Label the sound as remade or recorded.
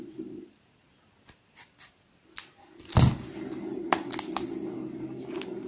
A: recorded